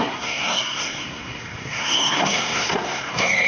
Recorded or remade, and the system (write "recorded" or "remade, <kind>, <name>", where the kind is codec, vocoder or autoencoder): remade, codec, SNAC